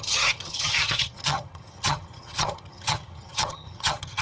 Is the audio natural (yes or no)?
no